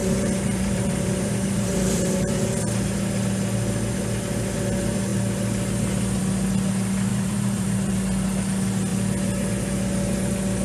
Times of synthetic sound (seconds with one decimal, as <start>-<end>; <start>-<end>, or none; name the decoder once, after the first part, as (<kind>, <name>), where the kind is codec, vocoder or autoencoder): 0.0-2.4 (vocoder, BigVGAN v2); 7.1-7.9